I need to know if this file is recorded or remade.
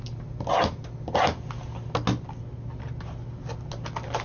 recorded